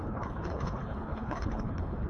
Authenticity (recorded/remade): remade